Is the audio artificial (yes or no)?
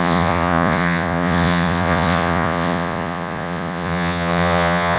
yes